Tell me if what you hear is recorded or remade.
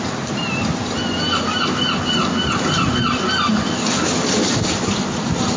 recorded